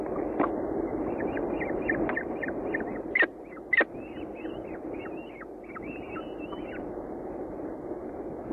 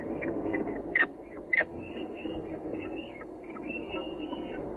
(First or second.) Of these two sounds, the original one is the first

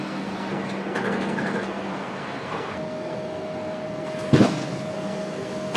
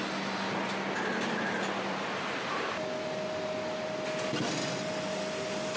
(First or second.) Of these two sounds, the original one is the second